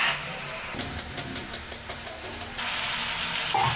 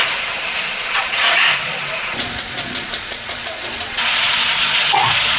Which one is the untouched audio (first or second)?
first